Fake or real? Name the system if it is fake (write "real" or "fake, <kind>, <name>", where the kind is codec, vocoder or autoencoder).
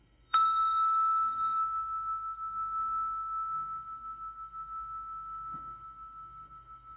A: fake, codec, SNAC